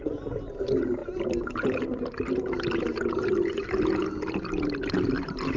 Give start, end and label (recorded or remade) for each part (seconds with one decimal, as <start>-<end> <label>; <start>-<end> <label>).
0.0-5.6 recorded